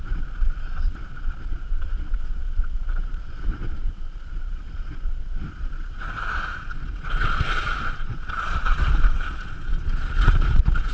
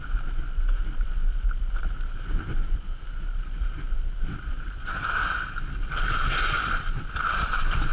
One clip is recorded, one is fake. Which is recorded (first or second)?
second